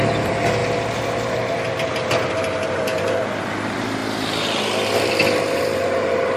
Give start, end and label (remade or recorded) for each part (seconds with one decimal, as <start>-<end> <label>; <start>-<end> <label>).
0.0-0.6 remade; 0.6-2.3 recorded; 2.3-4.0 remade; 4.0-5.5 recorded; 5.5-6.4 remade